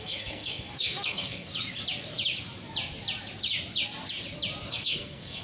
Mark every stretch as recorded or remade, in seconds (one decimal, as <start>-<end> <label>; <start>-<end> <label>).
0.0-1.5 remade; 1.5-4.7 recorded; 4.7-5.4 remade